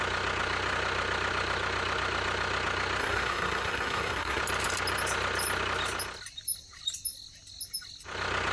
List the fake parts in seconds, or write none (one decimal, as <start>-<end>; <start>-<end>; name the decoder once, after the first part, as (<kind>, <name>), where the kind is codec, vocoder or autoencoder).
3.0-4.4 (codec, SNAC)